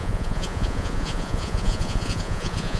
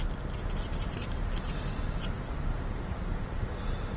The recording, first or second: second